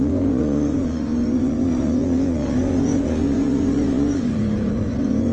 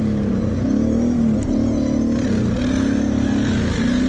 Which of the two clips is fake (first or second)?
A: first